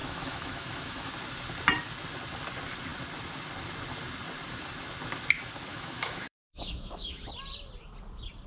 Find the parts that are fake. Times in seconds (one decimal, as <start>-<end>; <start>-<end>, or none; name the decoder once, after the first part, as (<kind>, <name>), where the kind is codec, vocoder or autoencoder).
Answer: 0.0-1.1 (autoencoder, DAC-VAE); 5.7-7.3